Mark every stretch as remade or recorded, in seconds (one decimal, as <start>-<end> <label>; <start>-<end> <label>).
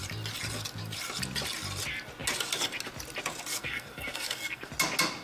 0.0-3.5 recorded; 3.5-4.7 remade; 4.7-5.2 recorded